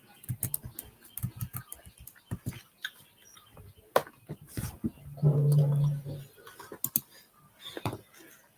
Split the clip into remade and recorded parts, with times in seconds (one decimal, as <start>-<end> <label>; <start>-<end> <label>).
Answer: 0.0-8.6 recorded